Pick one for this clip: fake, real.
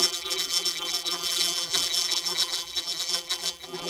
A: fake